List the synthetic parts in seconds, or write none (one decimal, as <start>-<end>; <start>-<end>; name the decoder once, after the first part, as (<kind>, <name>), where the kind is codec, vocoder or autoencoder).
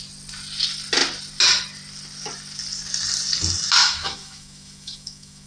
3.8-5.5 (autoencoder, DAC-VAE)